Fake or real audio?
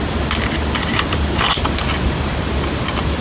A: real